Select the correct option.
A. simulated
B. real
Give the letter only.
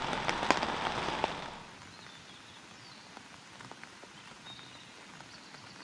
B